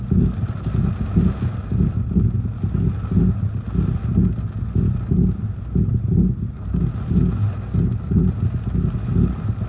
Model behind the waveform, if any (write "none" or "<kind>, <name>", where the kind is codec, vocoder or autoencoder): none